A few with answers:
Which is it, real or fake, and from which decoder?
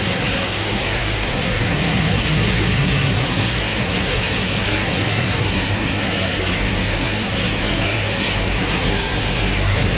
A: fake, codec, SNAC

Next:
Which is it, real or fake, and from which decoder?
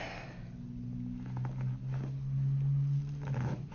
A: real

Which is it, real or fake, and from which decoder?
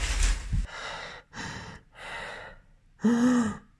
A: real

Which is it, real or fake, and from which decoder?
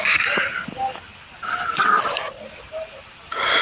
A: fake, vocoder, BigVGAN v2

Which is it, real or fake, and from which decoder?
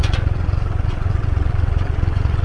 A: fake, vocoder, WaveNeXt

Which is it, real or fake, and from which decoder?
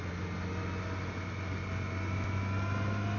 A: real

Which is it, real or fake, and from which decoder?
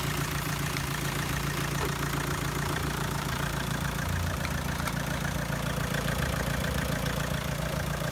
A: fake, vocoder, BigVGAN v2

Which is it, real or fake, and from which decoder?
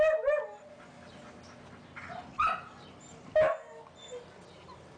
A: real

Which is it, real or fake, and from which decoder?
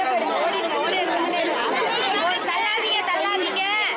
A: real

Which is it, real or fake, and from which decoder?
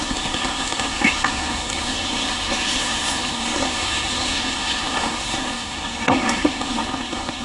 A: fake, codec, SNAC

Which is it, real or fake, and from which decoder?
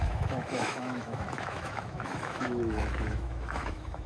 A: fake, autoencoder, DAC-VAE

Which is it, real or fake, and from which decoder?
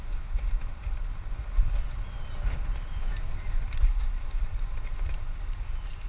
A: real